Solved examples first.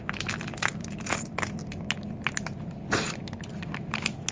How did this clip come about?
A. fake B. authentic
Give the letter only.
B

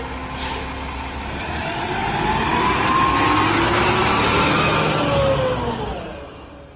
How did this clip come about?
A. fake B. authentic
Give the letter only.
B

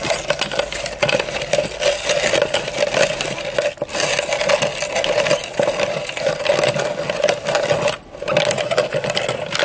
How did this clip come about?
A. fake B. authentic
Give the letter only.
B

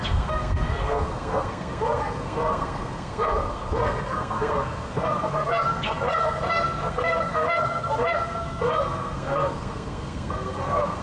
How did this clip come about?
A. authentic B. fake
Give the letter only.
B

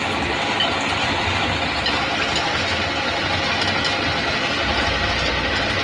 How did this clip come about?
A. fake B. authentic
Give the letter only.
B